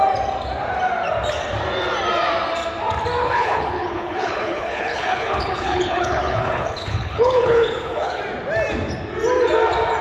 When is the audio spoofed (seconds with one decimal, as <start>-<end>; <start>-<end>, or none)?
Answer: 3.2-8.2